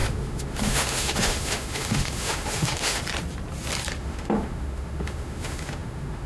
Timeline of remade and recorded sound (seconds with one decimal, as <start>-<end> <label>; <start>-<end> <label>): 0.0-3.0 remade; 3.0-4.0 recorded; 4.0-6.3 remade